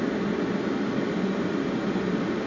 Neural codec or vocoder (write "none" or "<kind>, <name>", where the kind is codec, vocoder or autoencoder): none